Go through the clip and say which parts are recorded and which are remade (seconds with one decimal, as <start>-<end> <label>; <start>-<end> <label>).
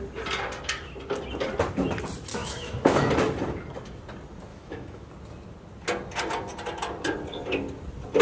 0.0-2.3 recorded; 2.3-3.1 remade; 3.1-4.5 recorded; 4.5-5.1 remade; 5.1-8.2 recorded